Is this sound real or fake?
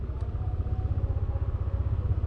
real